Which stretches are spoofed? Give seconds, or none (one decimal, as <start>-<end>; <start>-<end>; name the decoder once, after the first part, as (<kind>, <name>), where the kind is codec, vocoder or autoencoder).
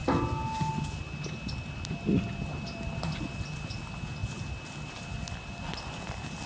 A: none